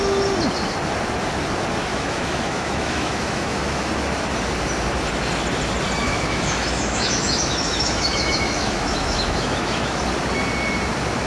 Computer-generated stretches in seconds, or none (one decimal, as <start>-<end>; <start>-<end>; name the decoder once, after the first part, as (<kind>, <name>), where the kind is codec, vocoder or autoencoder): 1.9-3.9 (autoencoder, DAC-VAE); 6.0-10.0